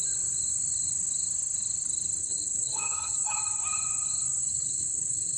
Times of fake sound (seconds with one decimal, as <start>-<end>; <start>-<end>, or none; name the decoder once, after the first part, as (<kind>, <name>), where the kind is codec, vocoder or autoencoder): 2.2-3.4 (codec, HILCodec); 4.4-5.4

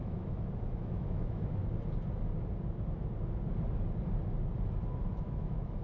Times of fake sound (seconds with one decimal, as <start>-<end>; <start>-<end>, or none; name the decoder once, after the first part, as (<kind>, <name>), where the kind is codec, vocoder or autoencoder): 0.0-1.6 (autoencoder, DAC-VAE); 5.1-5.8

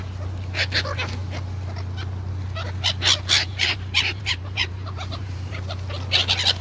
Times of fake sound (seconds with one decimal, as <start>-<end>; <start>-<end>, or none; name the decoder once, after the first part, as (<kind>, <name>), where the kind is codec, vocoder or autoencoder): 3.5-5.5 (vocoder, BigVGAN v2)

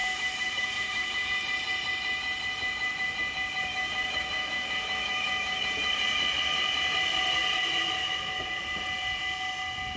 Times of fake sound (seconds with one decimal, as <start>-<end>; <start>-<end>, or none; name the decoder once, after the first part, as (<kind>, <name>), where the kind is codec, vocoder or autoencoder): 0.0-1.3 (autoencoder, DAC-VAE); 3.7-5.9

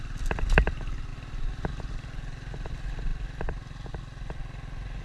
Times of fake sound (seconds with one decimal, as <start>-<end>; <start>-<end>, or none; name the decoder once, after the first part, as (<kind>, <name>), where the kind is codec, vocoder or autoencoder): none